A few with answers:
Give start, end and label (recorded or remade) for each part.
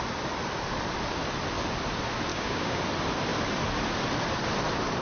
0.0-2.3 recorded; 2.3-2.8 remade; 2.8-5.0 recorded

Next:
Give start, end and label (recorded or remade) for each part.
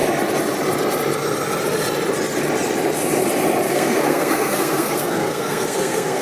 0.0-3.7 recorded; 3.7-6.2 remade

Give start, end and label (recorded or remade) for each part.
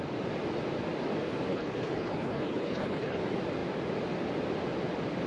0.0-1.5 recorded; 1.5-3.2 remade; 3.2-5.3 recorded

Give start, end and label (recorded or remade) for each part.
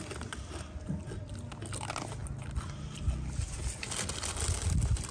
0.0-5.1 recorded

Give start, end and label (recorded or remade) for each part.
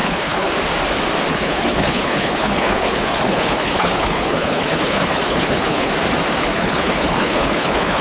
0.0-0.5 remade; 0.5-1.3 recorded; 1.3-5.9 remade; 5.9-6.4 recorded; 6.4-8.0 remade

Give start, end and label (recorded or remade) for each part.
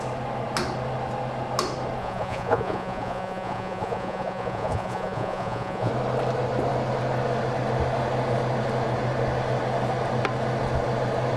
0.0-2.0 recorded; 2.0-5.9 remade; 5.9-11.4 recorded